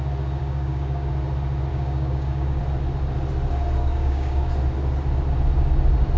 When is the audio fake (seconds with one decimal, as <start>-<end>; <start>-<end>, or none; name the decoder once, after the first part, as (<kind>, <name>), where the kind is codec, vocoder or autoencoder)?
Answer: 0.4-1.1 (codec, DAC); 1.7-2.6; 3.8-4.5